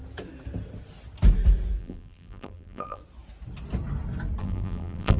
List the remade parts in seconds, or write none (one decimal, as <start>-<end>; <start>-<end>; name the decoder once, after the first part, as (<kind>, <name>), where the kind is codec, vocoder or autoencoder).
1.8-3.0 (vocoder, BigVGAN v2); 4.4-5.2